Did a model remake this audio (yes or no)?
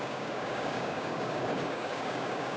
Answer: yes